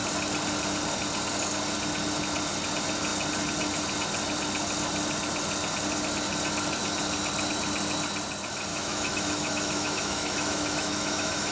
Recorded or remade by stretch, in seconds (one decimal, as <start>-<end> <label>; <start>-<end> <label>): 0.0-8.7 recorded; 8.7-11.5 remade

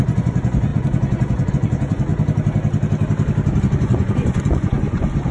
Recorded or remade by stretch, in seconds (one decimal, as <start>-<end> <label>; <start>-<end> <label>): 0.0-2.1 remade; 2.1-3.6 recorded; 3.6-5.3 remade

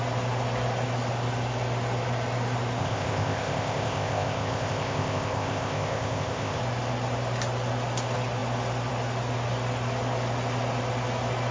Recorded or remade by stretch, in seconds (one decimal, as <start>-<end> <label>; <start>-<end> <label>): 0.0-2.8 recorded; 2.8-6.6 remade; 6.6-11.5 recorded

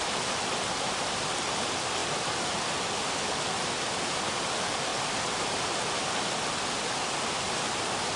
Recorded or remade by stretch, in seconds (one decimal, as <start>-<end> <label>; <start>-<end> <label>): 0.0-4.9 recorded; 4.9-6.6 remade; 6.6-8.2 recorded

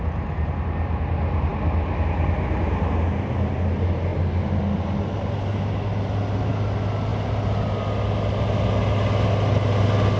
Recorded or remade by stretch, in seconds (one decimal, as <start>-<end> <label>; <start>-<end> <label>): 0.0-10.2 recorded

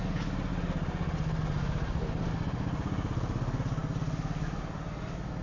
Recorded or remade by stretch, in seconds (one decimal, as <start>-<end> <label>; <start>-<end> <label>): 0.0-5.4 recorded

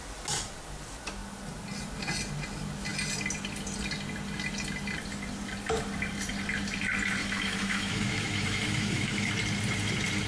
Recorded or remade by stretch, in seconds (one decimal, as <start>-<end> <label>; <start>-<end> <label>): 0.0-7.2 recorded; 7.2-9.3 remade; 9.3-10.3 recorded